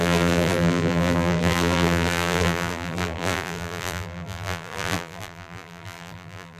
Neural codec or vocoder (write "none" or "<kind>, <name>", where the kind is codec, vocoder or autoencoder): vocoder, BigVGAN v2